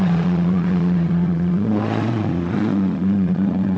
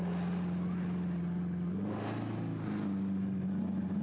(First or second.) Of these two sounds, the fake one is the first